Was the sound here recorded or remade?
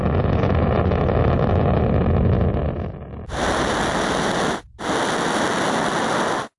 recorded